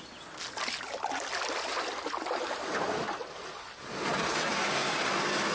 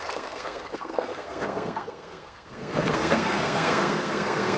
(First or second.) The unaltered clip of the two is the first